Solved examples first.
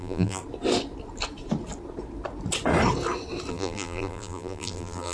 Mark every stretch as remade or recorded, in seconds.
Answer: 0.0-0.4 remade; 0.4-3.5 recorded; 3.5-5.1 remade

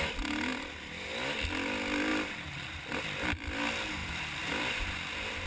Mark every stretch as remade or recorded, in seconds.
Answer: 0.0-2.1 recorded; 2.1-3.5 remade; 3.5-4.0 recorded; 4.0-5.5 remade

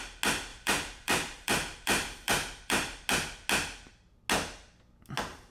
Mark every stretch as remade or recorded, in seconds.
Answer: 0.0-0.5 recorded; 0.5-3.1 remade; 3.1-5.5 recorded